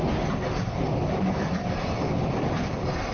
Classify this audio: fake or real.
real